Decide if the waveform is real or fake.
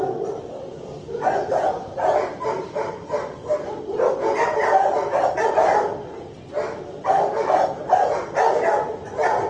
real